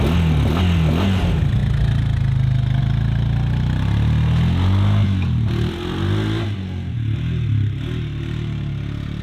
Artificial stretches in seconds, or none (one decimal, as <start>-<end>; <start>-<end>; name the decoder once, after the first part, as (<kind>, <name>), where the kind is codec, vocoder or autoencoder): none